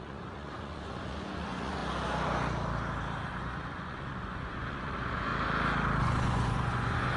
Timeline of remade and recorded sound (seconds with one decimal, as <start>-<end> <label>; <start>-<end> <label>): 0.0-1.8 remade; 1.8-3.3 recorded; 3.3-5.3 remade; 5.3-6.0 recorded; 6.0-7.2 remade